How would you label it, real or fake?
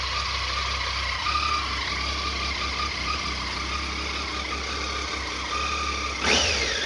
real